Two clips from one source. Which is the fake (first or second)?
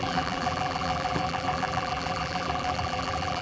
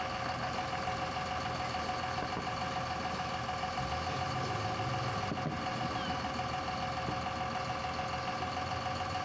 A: first